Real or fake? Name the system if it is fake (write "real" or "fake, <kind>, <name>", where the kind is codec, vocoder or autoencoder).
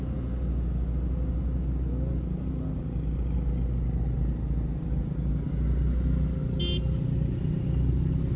real